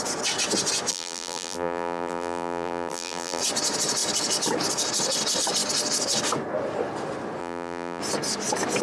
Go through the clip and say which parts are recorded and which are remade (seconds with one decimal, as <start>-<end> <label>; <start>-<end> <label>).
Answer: 0.0-0.9 recorded; 0.9-3.4 remade; 3.4-7.4 recorded; 7.4-8.0 remade; 8.0-8.8 recorded